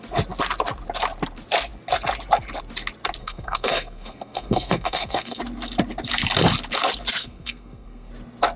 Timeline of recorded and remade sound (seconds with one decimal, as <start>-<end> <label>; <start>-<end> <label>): 0.0-3.2 recorded; 3.2-5.4 remade; 5.4-7.2 recorded; 7.2-8.1 remade; 8.1-8.6 recorded